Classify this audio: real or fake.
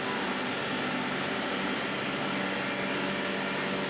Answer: real